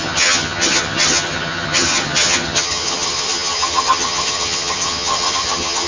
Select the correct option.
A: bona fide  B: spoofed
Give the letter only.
B